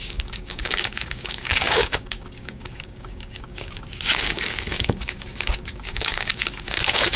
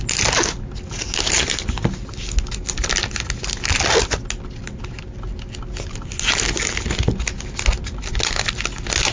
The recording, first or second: second